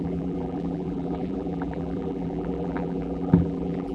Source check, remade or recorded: remade